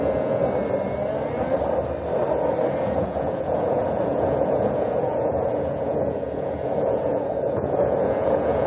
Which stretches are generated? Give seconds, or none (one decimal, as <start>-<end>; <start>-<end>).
0.0-0.4; 2.8-8.7